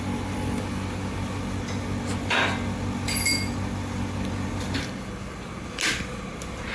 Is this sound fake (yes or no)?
no